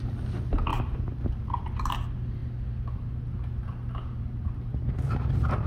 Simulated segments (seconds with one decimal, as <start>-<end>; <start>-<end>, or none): 0.7-1.4